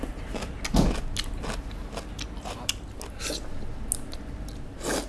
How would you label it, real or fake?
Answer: real